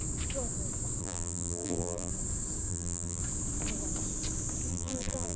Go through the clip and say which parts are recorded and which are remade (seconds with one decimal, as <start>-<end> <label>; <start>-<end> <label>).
0.0-1.0 recorded; 1.0-2.1 remade; 2.1-2.7 recorded; 2.7-3.2 remade; 3.2-4.7 recorded; 4.7-5.4 remade